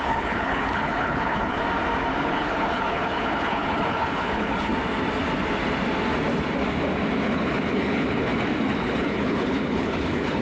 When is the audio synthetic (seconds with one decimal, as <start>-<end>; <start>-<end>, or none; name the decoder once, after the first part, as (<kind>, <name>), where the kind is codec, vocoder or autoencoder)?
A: 0.0-1.6 (codec, HILCodec); 2.2-4.7; 7.2-8.3; 8.8-10.4